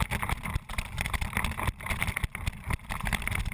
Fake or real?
fake